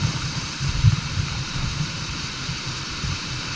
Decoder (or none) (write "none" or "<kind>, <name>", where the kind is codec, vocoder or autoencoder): vocoder, BigVGAN v2